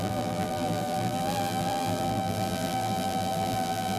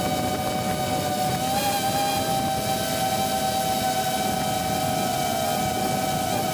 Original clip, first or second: second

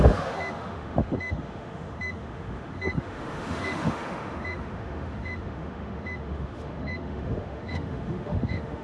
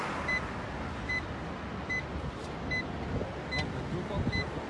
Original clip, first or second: second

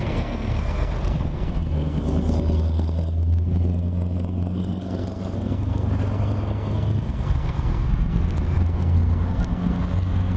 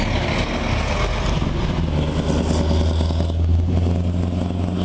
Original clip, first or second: second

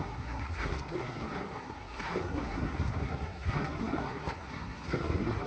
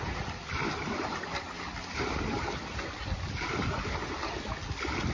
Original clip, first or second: second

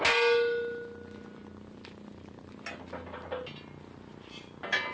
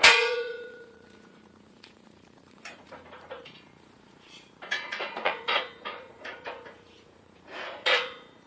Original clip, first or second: first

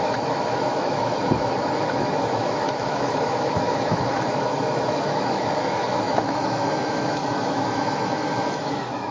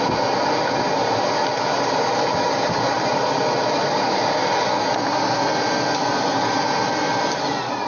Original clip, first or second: second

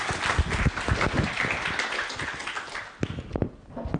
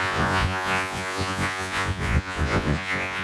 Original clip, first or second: first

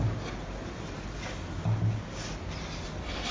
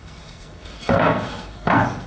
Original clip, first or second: first